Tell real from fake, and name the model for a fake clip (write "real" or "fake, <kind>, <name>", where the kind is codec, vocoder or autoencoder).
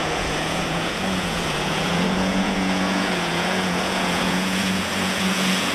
fake, vocoder, Vocos